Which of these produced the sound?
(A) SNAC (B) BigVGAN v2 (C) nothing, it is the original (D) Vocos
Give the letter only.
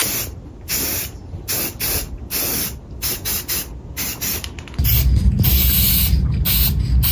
C